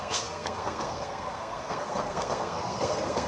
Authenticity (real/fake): fake